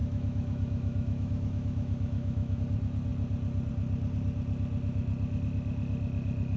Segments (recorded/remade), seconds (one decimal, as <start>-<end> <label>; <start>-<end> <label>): 0.0-2.6 remade; 2.6-6.6 recorded